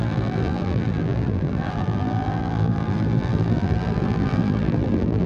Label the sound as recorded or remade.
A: remade